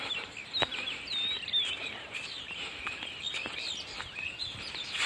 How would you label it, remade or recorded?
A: recorded